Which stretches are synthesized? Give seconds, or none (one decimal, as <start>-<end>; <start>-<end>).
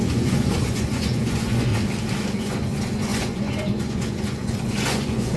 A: 0.0-1.7; 2.4-5.4